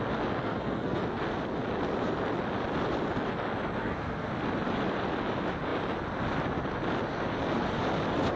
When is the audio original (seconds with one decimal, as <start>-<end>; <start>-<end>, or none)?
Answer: 0.0-0.4; 1.0-3.8; 4.3-8.4

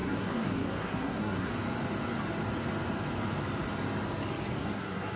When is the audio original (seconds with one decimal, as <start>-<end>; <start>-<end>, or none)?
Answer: 1.5-4.6

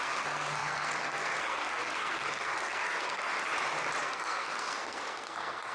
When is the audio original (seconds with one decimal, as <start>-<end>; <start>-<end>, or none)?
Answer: 3.3-4.0

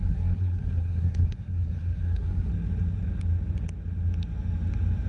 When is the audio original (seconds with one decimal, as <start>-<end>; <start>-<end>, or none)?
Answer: 2.5-5.1

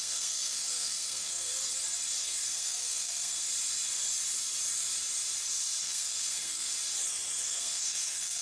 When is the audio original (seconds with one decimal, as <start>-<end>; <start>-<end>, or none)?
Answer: 1.6-2.2; 3.5-5.8; 6.7-7.4

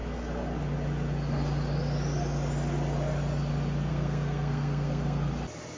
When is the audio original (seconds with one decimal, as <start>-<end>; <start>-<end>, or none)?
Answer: 0.0-3.9; 5.3-5.8